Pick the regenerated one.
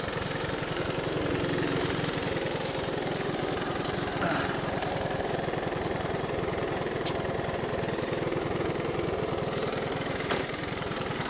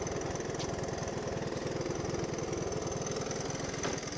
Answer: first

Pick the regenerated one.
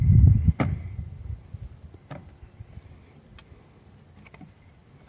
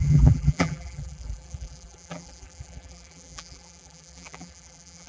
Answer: second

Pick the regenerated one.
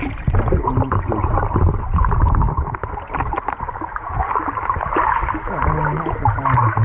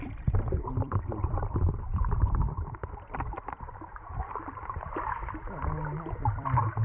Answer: second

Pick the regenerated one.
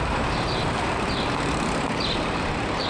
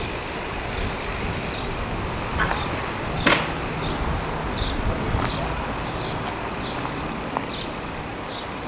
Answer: first